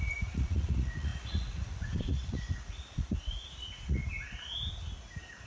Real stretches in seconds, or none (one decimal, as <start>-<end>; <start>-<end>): 4.0-5.5